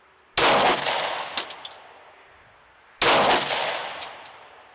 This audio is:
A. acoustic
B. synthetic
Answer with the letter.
A